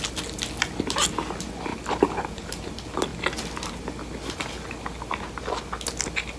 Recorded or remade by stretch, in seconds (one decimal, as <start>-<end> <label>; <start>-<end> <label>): 0.0-1.7 recorded; 1.7-2.7 remade; 2.7-6.4 recorded